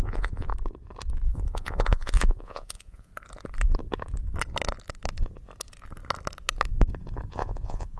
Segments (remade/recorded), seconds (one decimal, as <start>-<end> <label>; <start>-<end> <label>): 0.0-0.5 remade; 0.5-1.3 recorded; 1.3-3.1 remade; 3.1-7.3 recorded; 7.3-8.0 remade